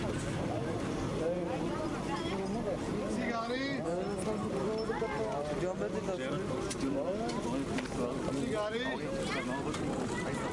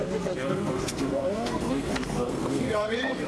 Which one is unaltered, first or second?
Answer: first